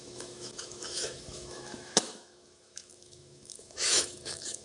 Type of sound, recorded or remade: remade